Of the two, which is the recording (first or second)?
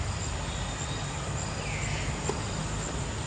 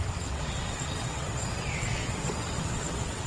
first